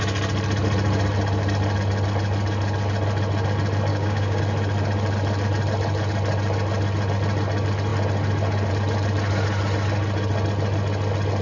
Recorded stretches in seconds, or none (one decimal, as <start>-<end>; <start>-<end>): 0.0-3.9; 4.4-11.4